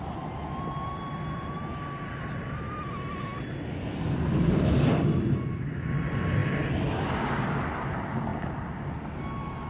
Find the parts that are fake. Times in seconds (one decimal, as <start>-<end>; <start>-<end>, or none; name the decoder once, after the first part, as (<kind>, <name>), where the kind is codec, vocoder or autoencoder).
none